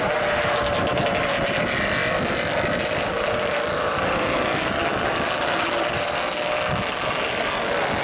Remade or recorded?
recorded